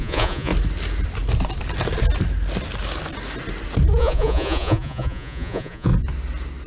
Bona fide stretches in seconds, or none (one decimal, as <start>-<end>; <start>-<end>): 0.5-4.0; 5.9-6.7